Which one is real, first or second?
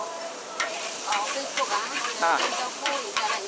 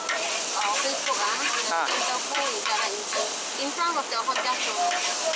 second